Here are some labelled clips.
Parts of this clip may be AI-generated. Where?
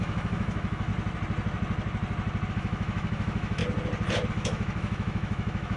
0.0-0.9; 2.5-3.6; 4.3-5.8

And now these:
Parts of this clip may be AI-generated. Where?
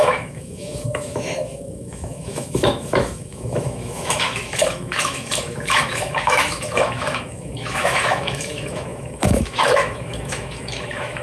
0.0-11.2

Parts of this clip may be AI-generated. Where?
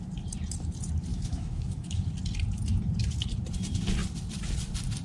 1.1-2.1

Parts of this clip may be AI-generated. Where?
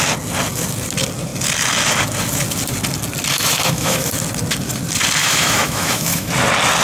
3.3-4.1; 5.2-6.3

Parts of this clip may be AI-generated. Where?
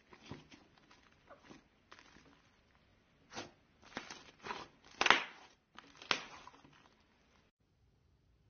none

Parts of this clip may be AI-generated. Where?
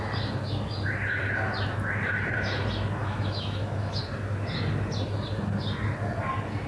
3.0-4.0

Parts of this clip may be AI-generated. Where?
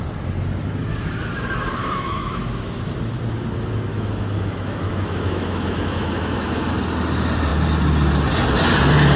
1.8-2.8; 3.9-6.7